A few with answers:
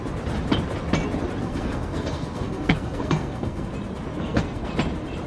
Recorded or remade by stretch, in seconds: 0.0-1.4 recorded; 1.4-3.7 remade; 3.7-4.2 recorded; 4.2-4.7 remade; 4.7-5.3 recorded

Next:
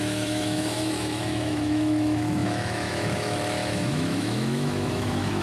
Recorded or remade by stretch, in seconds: 0.0-5.4 remade